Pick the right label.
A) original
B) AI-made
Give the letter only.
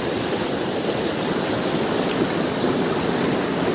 A